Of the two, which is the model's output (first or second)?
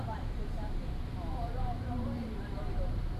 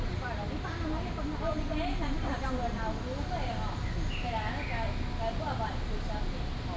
first